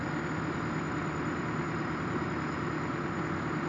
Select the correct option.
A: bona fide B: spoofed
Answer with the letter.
A